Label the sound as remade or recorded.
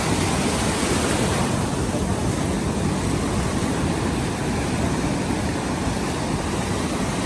recorded